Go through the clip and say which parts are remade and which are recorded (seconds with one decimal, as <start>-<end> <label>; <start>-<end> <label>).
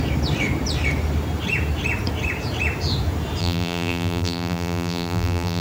0.0-3.4 recorded; 3.4-5.6 remade